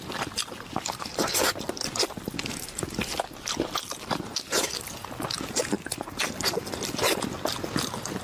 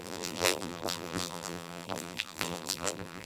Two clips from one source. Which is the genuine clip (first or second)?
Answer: first